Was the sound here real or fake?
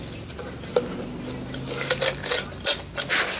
real